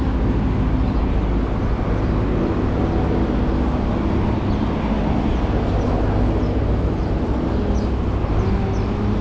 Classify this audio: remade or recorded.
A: recorded